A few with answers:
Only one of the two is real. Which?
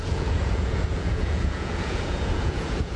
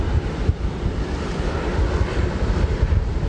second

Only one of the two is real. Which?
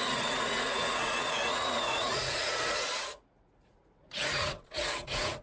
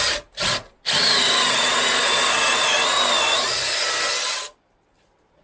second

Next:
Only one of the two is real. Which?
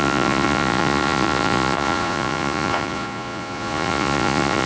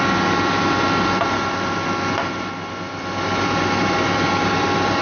second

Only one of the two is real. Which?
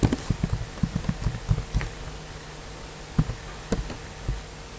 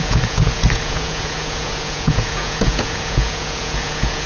first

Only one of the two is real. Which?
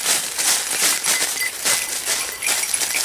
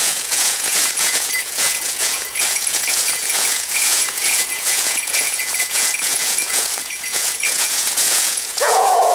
first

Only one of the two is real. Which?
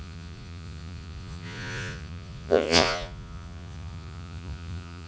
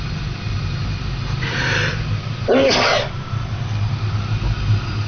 second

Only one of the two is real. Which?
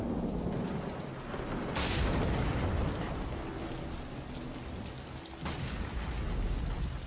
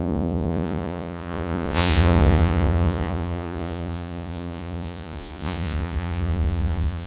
first